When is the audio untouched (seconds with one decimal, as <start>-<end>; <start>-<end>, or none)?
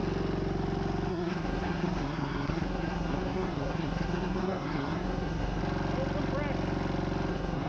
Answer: 0.0-1.1; 5.6-7.3